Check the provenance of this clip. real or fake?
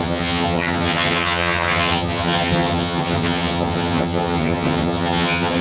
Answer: fake